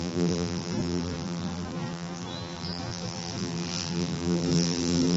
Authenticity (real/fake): fake